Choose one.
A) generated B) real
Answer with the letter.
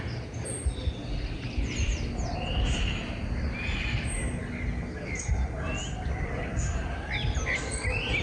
B